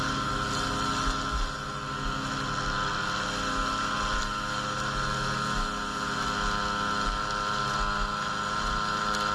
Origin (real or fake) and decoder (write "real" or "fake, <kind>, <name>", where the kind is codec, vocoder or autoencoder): real